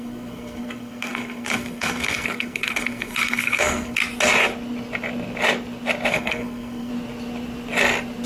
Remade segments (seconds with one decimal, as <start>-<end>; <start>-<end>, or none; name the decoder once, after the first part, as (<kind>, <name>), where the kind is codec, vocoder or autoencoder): 0.0-4.0 (codec, SNAC); 6.1-6.9